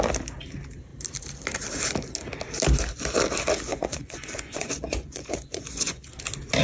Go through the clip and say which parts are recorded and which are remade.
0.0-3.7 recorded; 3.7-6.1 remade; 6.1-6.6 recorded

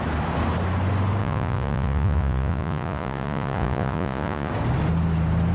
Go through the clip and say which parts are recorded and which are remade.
0.0-1.2 recorded; 1.2-4.5 remade; 4.5-5.5 recorded

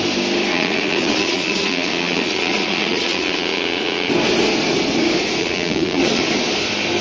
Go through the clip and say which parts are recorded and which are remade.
0.0-0.5 recorded; 0.5-4.1 remade; 4.1-5.4 recorded; 5.4-6.2 remade; 6.2-7.0 recorded

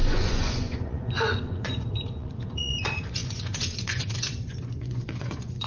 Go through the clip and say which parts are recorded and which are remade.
0.0-5.7 remade

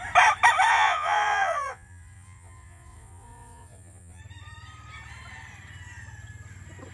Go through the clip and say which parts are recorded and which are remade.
0.0-0.7 recorded; 0.7-4.2 remade; 4.2-6.9 recorded

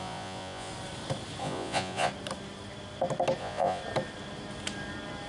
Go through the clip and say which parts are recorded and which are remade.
0.0-0.7 remade; 0.7-1.4 recorded; 1.4-2.1 remade; 2.1-3.4 recorded; 3.4-3.8 remade; 3.8-5.3 recorded